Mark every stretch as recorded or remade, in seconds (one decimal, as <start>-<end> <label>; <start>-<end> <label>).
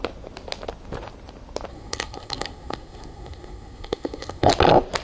0.0-1.7 recorded; 1.7-4.5 remade; 4.5-5.0 recorded